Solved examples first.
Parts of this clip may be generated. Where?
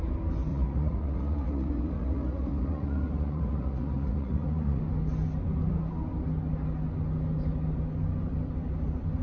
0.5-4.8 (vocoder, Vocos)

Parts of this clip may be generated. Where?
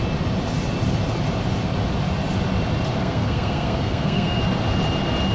3.0-4.4 (codec, SNAC)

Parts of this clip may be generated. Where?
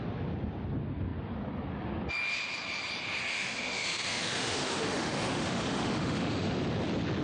3.3-6.6 (autoencoder, DAC-VAE)